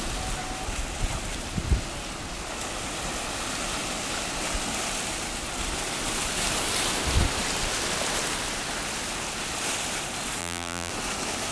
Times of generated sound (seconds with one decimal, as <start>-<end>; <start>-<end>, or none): 10.4-10.9